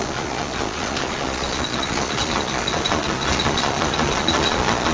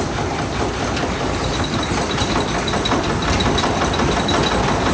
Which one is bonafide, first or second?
second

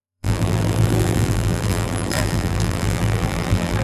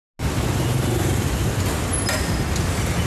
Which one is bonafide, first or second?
second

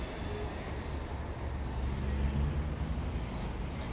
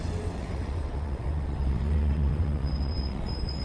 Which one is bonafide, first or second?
first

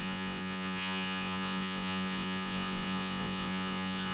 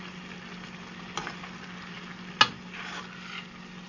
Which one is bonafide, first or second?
second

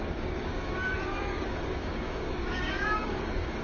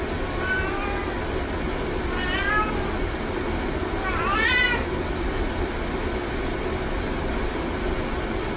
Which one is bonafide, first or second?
second